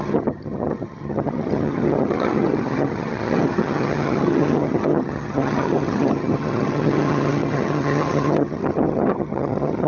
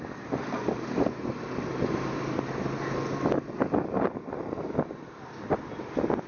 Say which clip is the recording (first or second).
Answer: second